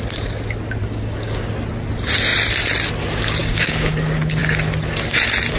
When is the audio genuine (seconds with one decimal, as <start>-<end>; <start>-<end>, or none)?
0.0-0.8; 1.5-3.4; 3.9-5.6